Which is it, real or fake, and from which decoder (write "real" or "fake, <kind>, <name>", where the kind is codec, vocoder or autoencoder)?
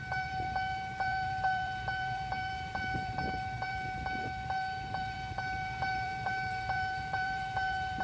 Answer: fake, vocoder, BigVGAN v2